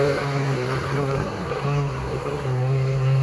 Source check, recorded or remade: remade